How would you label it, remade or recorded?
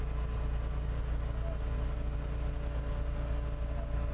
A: recorded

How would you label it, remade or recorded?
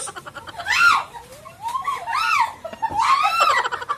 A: recorded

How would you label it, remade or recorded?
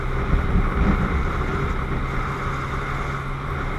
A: recorded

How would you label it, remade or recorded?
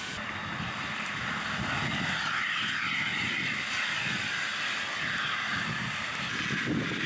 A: recorded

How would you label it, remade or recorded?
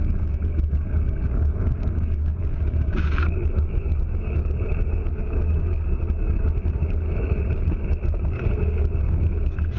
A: remade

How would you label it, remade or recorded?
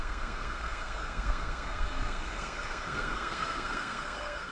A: remade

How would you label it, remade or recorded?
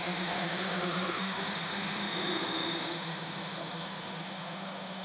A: remade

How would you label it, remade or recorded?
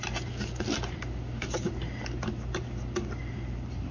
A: recorded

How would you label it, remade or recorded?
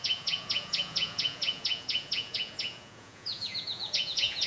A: remade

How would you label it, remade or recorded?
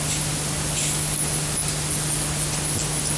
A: recorded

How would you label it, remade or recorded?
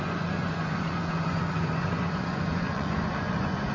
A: remade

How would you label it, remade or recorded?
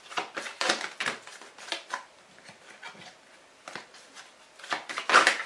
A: recorded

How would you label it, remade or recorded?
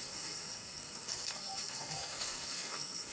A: remade